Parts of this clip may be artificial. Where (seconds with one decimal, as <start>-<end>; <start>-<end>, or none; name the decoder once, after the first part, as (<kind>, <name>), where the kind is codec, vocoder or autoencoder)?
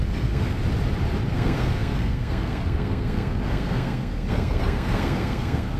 0.0-0.6 (codec, SNAC); 1.3-5.8